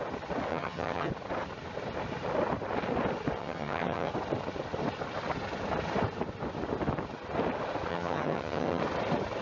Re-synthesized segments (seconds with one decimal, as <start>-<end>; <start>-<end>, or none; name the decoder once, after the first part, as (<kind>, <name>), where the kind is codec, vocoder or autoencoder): 0.5-1.1 (vocoder, HiFi-GAN); 3.4-4.1; 7.9-8.8